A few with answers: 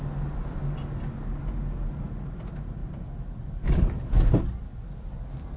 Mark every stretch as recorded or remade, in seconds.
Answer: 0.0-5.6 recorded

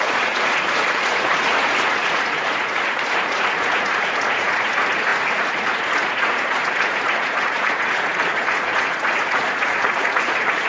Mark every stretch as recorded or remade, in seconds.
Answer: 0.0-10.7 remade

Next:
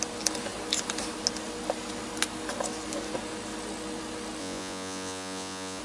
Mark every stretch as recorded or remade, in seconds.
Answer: 0.0-4.4 recorded; 4.4-5.8 remade